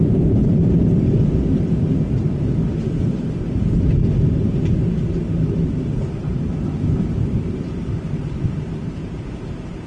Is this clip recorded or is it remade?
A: remade